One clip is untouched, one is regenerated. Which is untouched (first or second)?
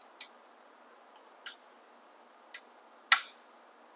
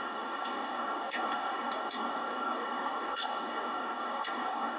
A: first